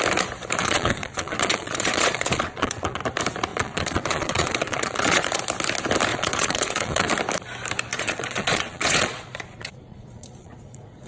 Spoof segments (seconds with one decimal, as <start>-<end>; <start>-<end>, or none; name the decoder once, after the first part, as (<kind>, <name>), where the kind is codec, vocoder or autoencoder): 0.6-3.0 (vocoder, Vocos); 3.5-5.4; 6.1-7.1; 7.9-11.1